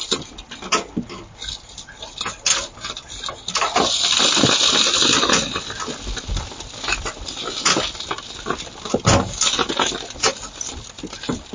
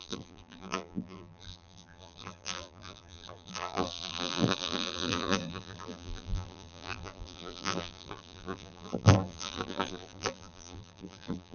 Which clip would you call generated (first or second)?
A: second